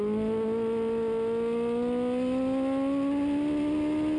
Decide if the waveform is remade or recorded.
recorded